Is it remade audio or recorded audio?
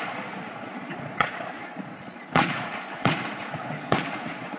remade